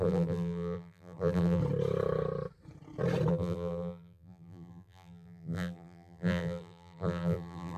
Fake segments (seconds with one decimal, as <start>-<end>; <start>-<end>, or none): 0.0-1.6; 3.3-7.8